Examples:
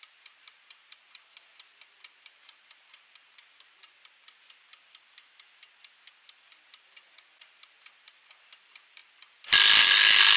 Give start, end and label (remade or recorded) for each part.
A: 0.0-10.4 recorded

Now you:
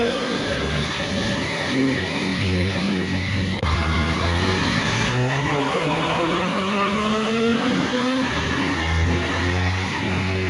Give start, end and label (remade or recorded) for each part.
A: 0.0-10.5 remade

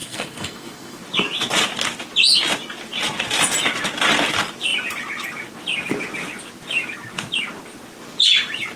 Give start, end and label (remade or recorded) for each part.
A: 0.0-1.0 remade; 1.0-8.8 recorded

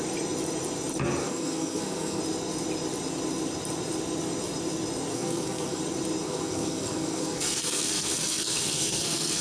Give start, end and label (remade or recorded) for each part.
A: 0.0-1.2 recorded; 1.2-2.2 remade; 2.2-5.1 recorded; 5.1-5.8 remade; 5.8-6.2 recorded; 6.2-9.4 remade